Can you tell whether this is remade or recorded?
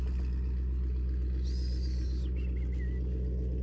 recorded